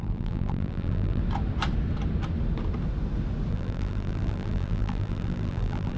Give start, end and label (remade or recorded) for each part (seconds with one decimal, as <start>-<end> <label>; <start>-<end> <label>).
0.0-1.2 remade; 1.2-3.5 recorded; 3.5-6.0 remade